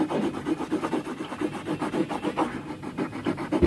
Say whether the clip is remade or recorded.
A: recorded